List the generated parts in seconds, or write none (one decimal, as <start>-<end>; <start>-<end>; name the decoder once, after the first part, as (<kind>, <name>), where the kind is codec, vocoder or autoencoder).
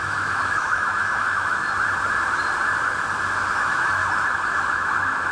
0.0-1.6 (autoencoder, DAC-VAE); 3.5-4.0; 4.6-5.3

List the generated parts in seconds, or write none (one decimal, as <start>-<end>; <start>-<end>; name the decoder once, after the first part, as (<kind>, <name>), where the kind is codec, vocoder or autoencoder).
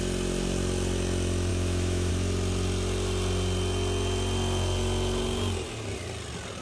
1.5-2.1 (autoencoder, DAC-VAE)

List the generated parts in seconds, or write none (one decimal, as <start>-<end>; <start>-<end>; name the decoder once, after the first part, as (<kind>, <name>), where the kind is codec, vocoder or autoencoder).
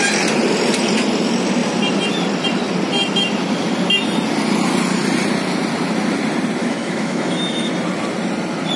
6.6-7.7 (autoencoder, DAC-VAE)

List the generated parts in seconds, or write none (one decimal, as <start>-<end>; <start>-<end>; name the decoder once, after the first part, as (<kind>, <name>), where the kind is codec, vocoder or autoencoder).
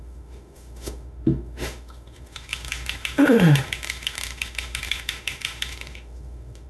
0.0-6.7 (autoencoder, DAC-VAE)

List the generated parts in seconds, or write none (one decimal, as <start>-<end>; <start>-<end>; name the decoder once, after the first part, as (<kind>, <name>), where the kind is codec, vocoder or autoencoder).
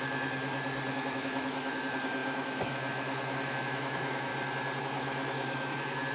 0.0-0.4 (autoencoder, DAC-VAE); 0.9-4.3; 4.8-6.1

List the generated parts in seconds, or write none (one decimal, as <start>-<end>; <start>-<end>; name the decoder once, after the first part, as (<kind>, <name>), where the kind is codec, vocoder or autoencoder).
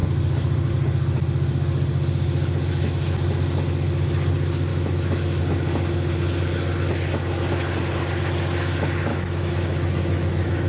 4.7-5.4 (autoencoder, DAC-VAE); 9.1-10.7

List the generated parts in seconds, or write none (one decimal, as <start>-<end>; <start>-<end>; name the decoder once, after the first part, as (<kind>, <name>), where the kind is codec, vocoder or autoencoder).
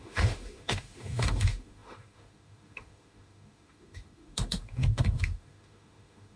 0.0-6.4 (autoencoder, DAC-VAE)